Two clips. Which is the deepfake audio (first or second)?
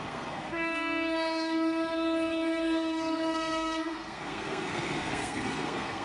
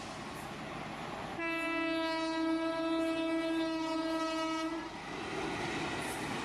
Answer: first